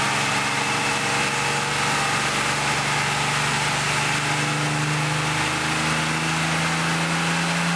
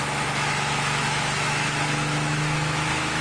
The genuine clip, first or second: first